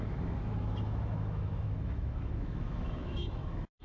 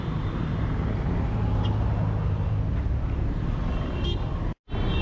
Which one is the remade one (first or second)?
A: first